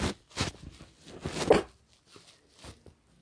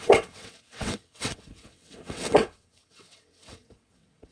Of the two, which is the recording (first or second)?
first